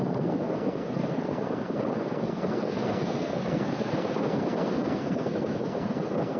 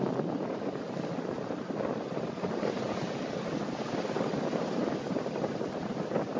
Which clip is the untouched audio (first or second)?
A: second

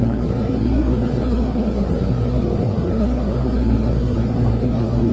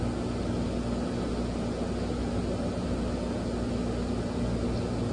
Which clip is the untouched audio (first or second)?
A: second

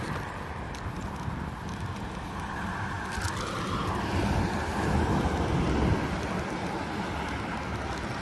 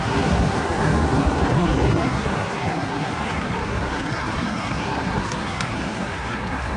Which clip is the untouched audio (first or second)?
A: first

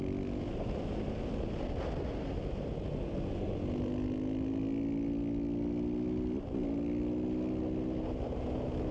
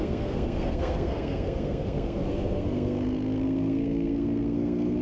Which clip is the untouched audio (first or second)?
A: first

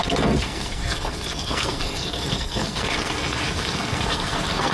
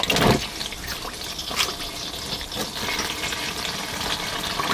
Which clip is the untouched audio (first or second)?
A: second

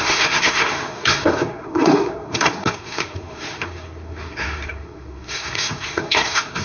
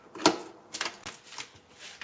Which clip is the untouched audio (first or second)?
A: second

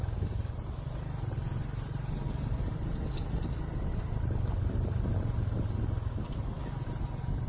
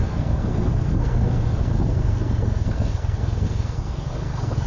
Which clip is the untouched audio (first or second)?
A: first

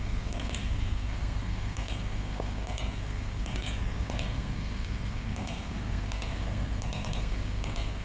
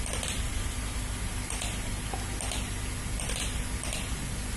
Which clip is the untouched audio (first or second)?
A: second